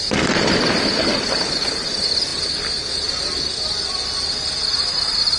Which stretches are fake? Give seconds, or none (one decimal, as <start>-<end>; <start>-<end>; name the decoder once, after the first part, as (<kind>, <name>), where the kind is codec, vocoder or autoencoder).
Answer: none